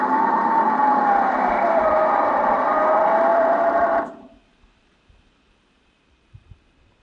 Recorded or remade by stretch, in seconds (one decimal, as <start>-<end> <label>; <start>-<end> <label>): 0.0-7.0 remade